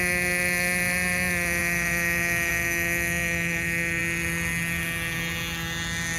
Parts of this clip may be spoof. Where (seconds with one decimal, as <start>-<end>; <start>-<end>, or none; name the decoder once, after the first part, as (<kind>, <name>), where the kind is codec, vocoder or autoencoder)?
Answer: 0.0-4.0 (autoencoder, DAC-VAE)